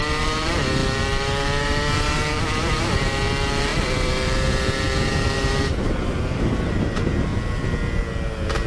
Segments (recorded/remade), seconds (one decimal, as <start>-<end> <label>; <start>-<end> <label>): 0.0-7.3 remade; 7.3-8.7 recorded